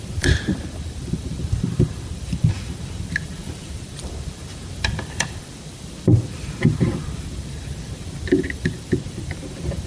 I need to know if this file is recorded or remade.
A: remade